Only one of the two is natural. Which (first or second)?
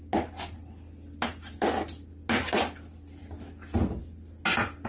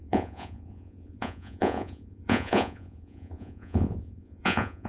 first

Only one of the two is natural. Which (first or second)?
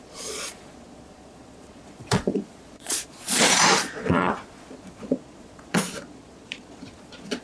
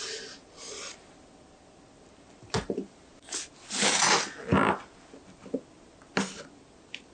second